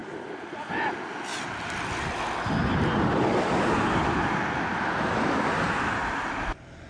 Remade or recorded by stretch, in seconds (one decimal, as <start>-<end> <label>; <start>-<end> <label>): 0.0-1.3 recorded; 1.3-5.3 remade; 5.3-6.0 recorded; 6.0-6.5 remade; 6.5-6.9 recorded